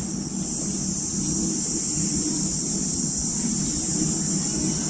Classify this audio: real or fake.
real